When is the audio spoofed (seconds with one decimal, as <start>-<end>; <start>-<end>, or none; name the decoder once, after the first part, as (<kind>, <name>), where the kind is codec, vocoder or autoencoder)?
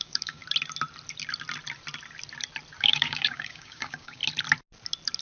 0.0-0.4 (codec, DAC); 2.8-4.2